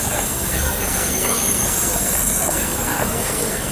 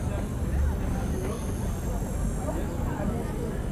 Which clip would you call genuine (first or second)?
second